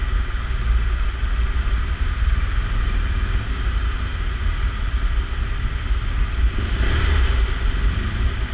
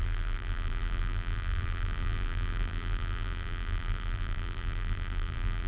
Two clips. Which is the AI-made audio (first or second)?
second